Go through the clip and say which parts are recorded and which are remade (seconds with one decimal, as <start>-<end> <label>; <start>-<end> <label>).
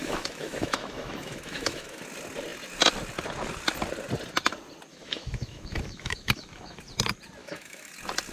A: 0.0-2.0 remade; 2.0-4.9 recorded; 4.9-6.8 remade; 6.8-7.4 recorded; 7.4-7.9 remade; 7.9-8.3 recorded